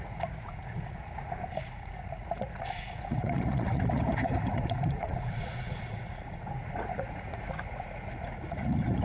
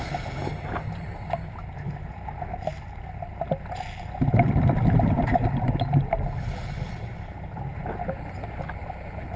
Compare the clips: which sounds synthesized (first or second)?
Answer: first